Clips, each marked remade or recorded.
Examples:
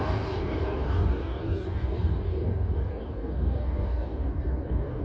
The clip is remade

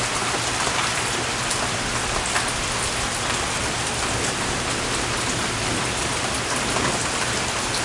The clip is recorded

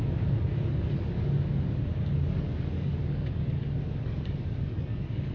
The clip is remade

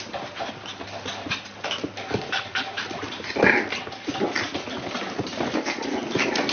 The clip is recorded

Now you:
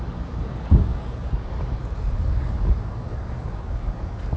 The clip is remade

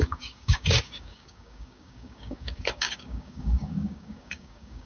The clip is remade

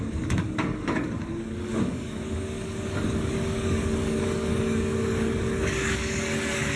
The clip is remade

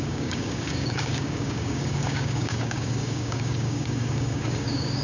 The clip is remade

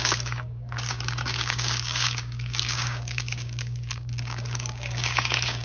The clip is remade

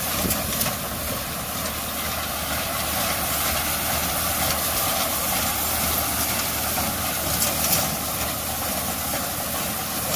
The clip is recorded